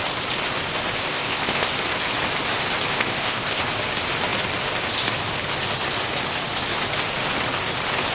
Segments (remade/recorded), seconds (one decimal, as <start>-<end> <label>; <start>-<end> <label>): 0.0-1.1 recorded; 1.1-1.7 remade; 1.7-2.9 recorded; 2.9-3.6 remade; 3.6-8.1 recorded

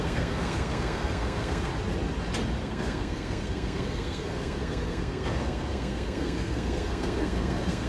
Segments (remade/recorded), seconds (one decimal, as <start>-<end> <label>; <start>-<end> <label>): 0.0-1.7 remade; 1.7-2.6 recorded; 2.6-7.9 remade

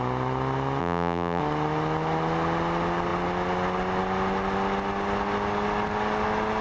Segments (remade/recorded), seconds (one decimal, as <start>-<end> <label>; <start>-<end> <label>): 0.0-0.8 recorded; 0.8-1.4 remade; 1.4-6.6 recorded